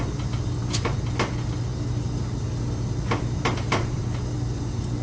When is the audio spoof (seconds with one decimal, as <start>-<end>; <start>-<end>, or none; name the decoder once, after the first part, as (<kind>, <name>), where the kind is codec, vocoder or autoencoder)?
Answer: none